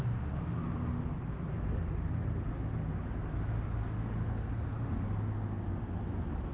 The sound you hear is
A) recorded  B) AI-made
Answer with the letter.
A